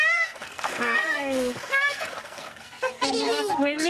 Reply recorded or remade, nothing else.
remade